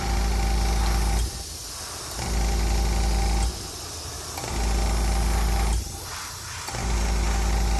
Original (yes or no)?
yes